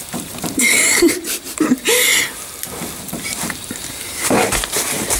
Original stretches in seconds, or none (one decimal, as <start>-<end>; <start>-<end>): 2.1-3.0

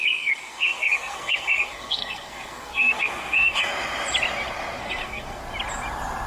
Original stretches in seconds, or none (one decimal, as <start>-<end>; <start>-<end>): 3.7-4.8; 5.4-6.3

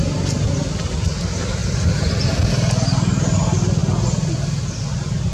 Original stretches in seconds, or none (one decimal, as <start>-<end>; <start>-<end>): 0.0-5.3

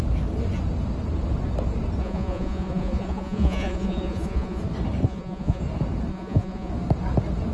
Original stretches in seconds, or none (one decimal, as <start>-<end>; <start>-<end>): 0.0-2.0; 4.6-5.0; 5.6-6.1; 6.7-7.5

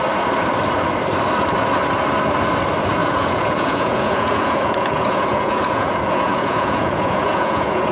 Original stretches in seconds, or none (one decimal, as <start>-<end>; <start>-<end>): 0.0-3.0

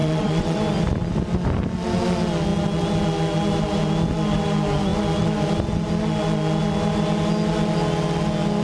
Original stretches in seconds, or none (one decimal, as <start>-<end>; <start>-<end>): 0.6-8.6

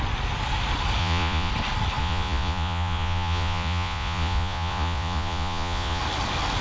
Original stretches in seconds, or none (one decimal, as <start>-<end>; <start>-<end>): 0.0-1.0; 1.5-2.0; 6.0-6.6